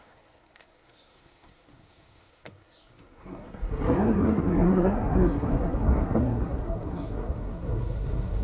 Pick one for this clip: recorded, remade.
remade